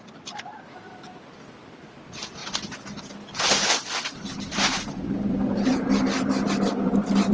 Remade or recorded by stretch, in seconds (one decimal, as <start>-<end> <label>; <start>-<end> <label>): 0.0-7.3 recorded